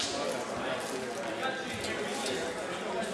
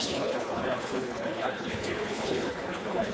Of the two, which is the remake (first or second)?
second